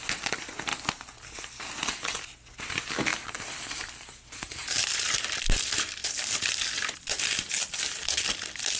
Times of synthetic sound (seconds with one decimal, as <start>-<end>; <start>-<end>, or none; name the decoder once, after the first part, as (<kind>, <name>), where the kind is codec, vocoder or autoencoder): 3.1-4.2 (vocoder, BigVGAN v2); 6.0-7.8